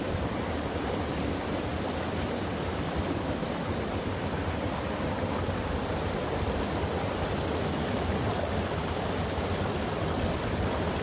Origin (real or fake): real